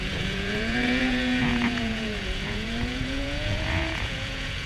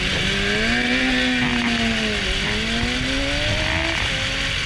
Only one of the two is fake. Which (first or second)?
first